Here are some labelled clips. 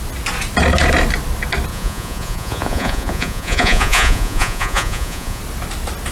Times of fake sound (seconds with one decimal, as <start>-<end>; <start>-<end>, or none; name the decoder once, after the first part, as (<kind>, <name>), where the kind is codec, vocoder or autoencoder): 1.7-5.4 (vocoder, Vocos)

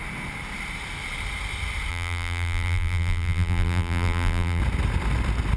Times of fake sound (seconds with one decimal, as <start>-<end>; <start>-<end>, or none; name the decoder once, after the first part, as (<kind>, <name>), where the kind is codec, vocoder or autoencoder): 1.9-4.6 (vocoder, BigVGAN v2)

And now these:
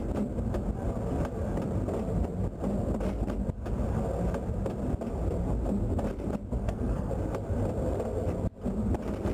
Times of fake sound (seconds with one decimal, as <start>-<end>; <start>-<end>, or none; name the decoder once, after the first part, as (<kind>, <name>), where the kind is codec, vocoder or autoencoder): 6.6-7.1 (codec, SNAC)

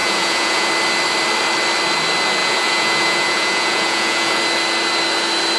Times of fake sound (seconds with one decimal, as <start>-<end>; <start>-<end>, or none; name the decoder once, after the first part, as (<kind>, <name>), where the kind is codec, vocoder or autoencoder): 0.0-0.7 (vocoder, Vocos); 2.4-4.4